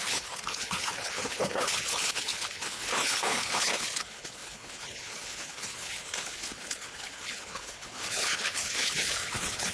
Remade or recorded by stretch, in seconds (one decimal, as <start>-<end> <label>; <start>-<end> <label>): 0.0-9.7 remade